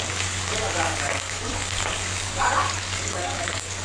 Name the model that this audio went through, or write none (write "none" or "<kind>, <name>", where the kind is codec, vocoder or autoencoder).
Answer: codec, DAC